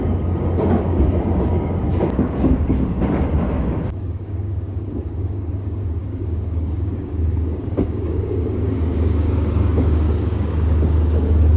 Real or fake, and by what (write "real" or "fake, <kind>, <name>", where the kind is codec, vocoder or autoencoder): fake, codec, DAC